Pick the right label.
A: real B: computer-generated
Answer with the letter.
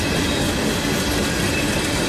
A